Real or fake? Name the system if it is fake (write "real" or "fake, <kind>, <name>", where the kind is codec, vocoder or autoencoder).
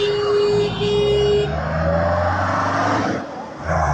real